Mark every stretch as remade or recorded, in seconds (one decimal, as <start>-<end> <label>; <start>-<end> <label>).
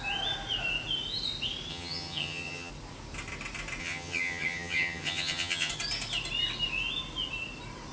0.0-1.7 recorded; 1.7-2.7 remade; 2.7-3.8 recorded; 3.8-5.7 remade; 5.7-7.9 recorded